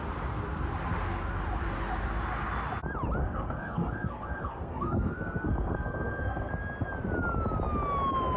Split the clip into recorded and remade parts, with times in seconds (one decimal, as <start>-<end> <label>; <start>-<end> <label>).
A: 0.0-3.2 recorded; 3.2-6.5 remade; 6.5-8.4 recorded